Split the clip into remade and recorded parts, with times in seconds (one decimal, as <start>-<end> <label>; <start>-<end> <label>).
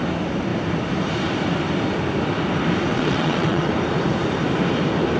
0.0-2.9 recorded; 2.9-3.7 remade; 3.7-5.2 recorded